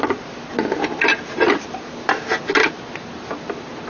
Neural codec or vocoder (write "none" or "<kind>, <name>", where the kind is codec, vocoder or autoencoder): none